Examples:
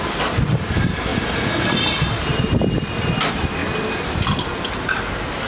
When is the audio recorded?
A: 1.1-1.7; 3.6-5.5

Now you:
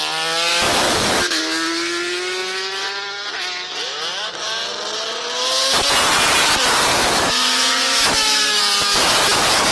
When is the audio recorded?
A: 0.0-0.5; 1.4-6.9; 8.6-9.7

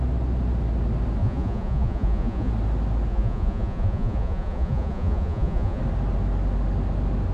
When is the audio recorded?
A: 0.0-1.2; 2.5-3.1; 5.8-7.3

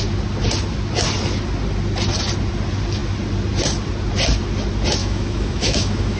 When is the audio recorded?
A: 0.0-5.0

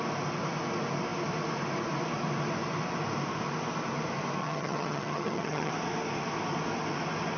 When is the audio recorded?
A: 0.0-4.4; 5.7-7.4